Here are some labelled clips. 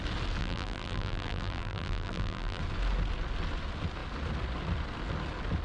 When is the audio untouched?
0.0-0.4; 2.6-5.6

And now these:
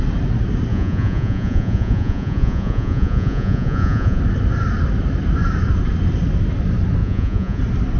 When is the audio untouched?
0.0-0.7; 4.2-7.0; 7.6-8.0

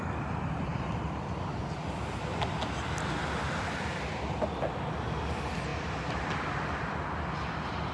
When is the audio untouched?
0.0-0.7; 1.8-7.9

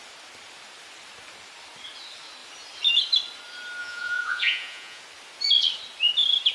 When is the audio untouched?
0.0-3.8; 5.0-6.5

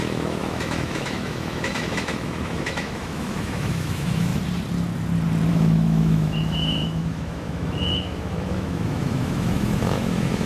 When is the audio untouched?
4.3-5.5

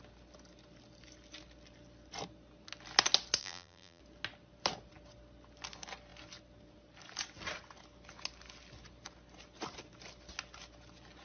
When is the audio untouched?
0.0-3.4; 4.0-11.2

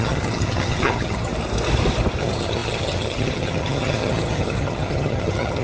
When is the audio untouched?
1.3-2.2

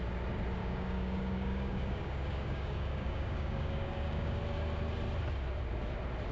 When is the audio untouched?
0.0-0.6; 4.4-6.3